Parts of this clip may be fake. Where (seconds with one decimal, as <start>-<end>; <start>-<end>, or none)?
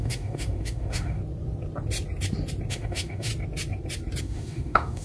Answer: 0.0-1.2; 2.7-3.3; 4.2-5.0